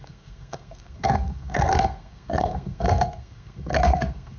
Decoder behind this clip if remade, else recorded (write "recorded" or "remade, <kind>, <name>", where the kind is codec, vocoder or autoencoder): remade, codec, SNAC